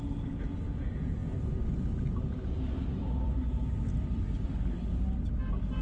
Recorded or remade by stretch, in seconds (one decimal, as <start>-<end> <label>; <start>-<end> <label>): 0.0-5.8 recorded